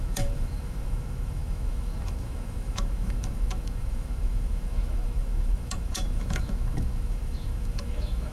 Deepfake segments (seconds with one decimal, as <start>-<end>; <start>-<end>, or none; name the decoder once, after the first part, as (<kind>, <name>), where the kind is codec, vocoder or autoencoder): 0.0-8.3 (autoencoder, DAC-VAE)